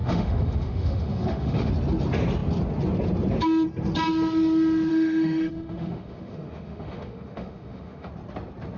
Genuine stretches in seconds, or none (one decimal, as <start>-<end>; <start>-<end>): 1.7-4.9; 8.1-8.8

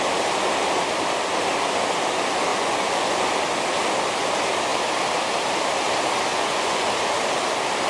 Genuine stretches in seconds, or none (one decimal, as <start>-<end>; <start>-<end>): 0.0-2.5; 3.3-6.3; 6.9-7.9

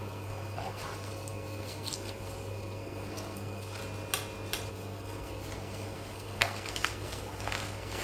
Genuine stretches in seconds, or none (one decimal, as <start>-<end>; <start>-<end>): 3.8-4.7

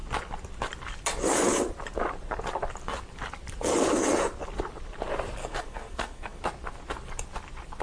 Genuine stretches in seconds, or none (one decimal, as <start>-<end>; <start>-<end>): 0.0-5.4; 6.4-7.8

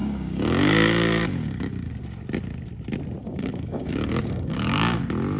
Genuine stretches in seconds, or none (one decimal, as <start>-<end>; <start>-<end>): 1.9-3.2; 5.0-5.4

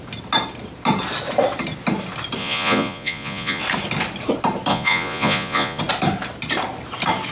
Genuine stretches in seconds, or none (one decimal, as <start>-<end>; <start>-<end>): 0.0-2.4; 3.6-4.7; 5.8-7.3

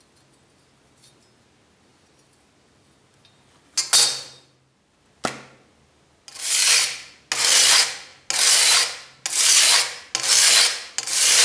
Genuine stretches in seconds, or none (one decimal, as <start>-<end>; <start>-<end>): 0.0-11.4